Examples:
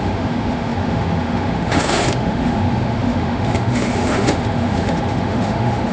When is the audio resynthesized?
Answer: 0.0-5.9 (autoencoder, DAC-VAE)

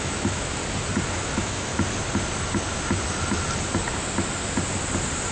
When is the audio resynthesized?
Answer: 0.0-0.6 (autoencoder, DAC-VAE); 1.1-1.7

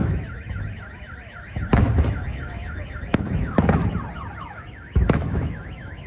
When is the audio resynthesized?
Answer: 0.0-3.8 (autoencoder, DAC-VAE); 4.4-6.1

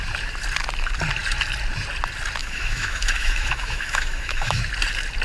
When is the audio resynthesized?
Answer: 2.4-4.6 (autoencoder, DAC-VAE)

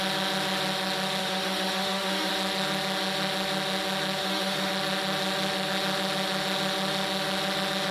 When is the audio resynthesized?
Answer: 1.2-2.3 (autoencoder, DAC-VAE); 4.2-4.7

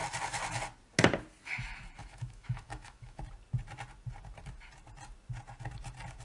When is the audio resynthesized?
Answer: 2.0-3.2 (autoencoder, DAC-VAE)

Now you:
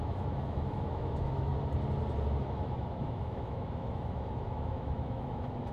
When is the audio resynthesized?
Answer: 0.0-1.5 (autoencoder, DAC-VAE); 2.4-5.7

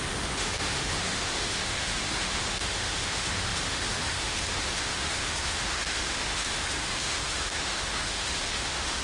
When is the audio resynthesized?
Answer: 0.0-9.0 (autoencoder, DAC-VAE)